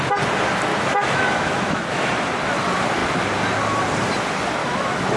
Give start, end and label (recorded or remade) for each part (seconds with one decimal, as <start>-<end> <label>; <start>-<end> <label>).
0.0-0.7 recorded; 0.7-2.1 remade; 2.1-4.6 recorded; 4.6-5.2 remade